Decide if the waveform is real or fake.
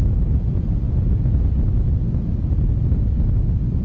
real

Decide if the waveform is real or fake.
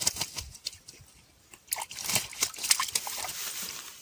real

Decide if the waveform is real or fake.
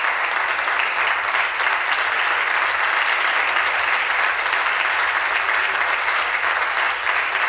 real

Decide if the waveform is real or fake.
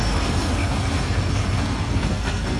fake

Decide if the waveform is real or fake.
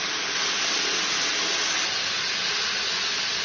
real